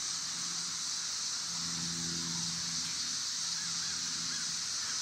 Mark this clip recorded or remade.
recorded